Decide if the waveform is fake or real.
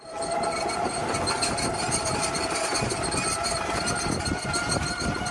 real